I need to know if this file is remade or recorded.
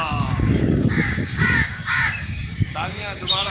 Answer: remade